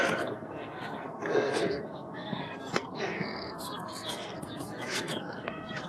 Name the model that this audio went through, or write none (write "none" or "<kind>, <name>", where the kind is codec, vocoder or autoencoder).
codec, SNAC